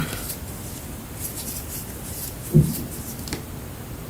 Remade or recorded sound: recorded